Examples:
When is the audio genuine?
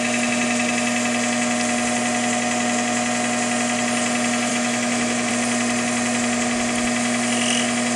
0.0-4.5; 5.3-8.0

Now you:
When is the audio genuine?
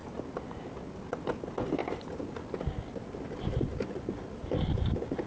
0.0-5.3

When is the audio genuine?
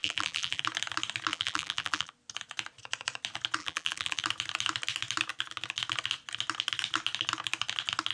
0.6-1.3; 2.1-3.6; 4.2-8.1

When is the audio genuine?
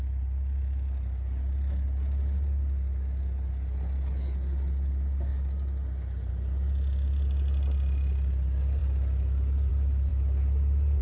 0.0-11.0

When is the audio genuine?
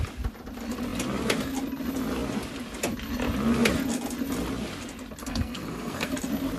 0.0-5.2; 6.1-6.6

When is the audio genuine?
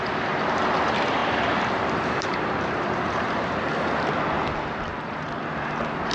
0.0-1.2; 3.6-4.9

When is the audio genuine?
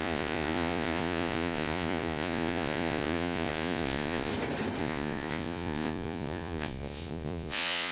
4.3-4.8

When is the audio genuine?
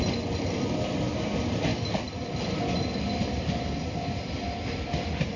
0.0-5.4